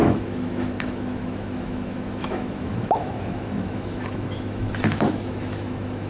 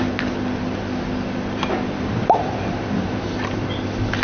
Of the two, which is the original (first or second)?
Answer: second